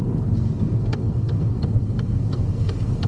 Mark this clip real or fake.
fake